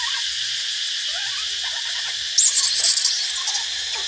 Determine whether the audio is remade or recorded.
recorded